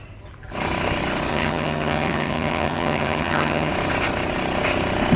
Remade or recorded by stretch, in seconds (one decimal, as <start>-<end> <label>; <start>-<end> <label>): 0.0-1.3 recorded; 1.3-3.7 remade; 3.7-5.2 recorded